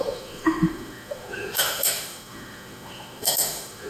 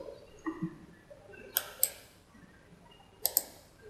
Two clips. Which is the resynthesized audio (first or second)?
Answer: first